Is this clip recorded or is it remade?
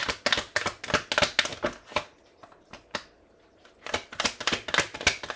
recorded